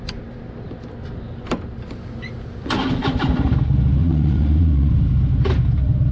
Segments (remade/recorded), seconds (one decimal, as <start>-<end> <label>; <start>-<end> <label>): 0.0-4.0 recorded; 4.0-4.9 remade; 4.9-6.1 recorded